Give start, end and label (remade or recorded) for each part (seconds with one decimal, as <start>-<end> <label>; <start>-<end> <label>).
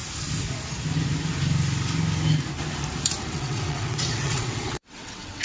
0.0-3.2 recorded; 3.2-5.4 remade